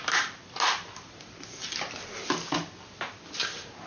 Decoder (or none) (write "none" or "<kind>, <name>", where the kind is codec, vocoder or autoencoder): none